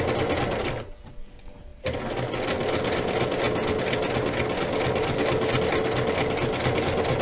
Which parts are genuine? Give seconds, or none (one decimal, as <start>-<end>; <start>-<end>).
0.0-7.2